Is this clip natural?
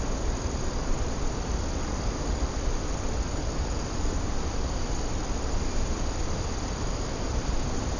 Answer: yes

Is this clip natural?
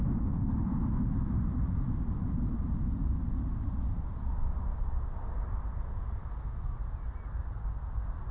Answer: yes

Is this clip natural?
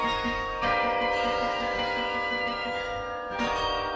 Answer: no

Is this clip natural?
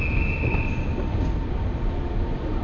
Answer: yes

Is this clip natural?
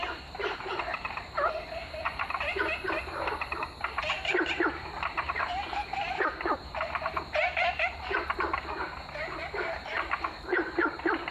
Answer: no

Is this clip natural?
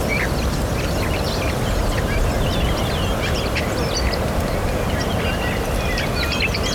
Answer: yes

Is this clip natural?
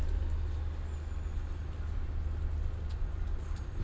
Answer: yes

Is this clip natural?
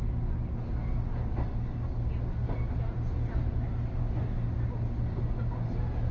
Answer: yes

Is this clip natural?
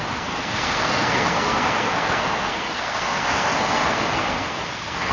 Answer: no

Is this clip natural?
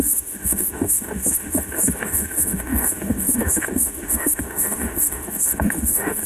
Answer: no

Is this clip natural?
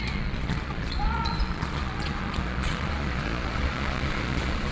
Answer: no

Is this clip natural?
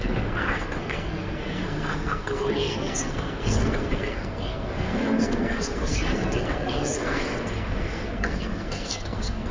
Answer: no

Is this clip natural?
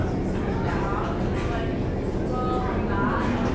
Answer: yes